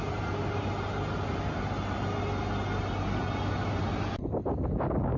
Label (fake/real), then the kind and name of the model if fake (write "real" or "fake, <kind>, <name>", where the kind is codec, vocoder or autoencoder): real